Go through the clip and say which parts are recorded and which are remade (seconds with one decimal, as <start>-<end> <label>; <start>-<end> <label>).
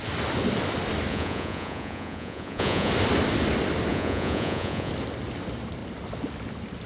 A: 0.0-1.1 recorded; 1.1-2.9 remade; 2.9-3.9 recorded; 3.9-4.9 remade; 4.9-6.9 recorded